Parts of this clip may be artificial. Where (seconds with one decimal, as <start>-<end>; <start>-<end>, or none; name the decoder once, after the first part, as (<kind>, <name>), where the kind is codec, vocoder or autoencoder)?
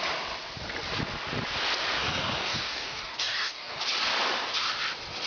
2.0-3.8 (codec, DAC)